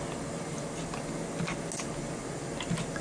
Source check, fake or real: real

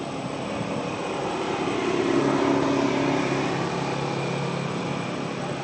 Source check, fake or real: real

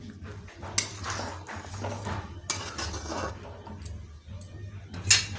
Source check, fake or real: real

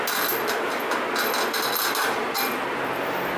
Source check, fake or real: real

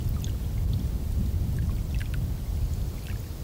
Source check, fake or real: real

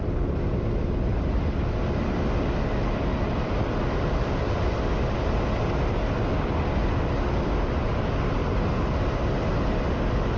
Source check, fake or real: real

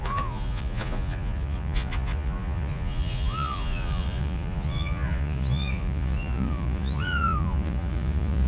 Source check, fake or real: fake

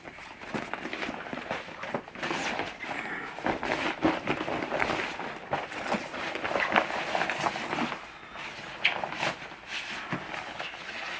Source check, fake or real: real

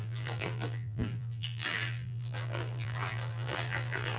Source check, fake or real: fake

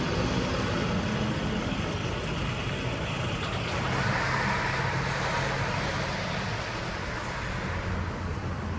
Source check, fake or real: real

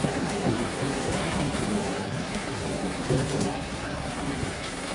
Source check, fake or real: fake